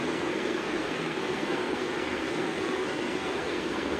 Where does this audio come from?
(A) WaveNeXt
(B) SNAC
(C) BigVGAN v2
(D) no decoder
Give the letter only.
B